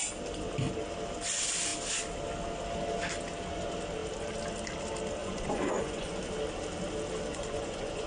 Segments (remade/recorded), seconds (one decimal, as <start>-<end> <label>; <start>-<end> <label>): 0.0-5.2 recorded; 5.2-6.2 remade; 6.2-7.3 recorded; 7.3-8.1 remade

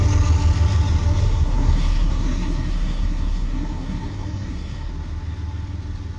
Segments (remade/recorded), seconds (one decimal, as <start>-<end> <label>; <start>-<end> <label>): 0.0-1.2 recorded; 1.2-4.9 remade; 4.9-6.2 recorded

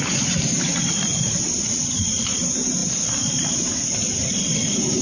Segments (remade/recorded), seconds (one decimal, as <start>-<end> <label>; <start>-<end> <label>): 0.0-5.0 recorded

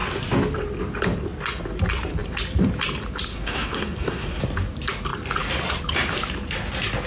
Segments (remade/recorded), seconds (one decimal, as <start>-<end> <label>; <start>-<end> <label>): 0.0-3.3 recorded; 3.3-4.4 remade; 4.4-7.1 recorded

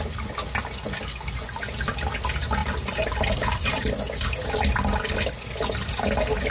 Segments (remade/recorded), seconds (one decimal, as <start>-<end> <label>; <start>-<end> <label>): 0.0-2.6 recorded; 2.6-3.9 remade; 3.9-6.5 recorded